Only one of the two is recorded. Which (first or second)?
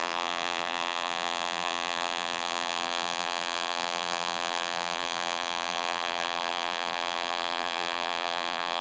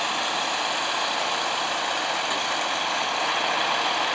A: second